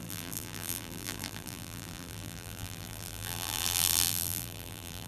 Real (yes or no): no